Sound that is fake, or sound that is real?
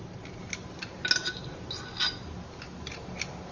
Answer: real